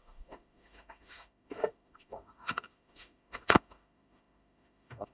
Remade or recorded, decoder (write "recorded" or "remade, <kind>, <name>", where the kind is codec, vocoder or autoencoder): remade, autoencoder, DAC-VAE